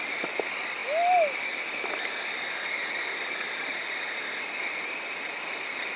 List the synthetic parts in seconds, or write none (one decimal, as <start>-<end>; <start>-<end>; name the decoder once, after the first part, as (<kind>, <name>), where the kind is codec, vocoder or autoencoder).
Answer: none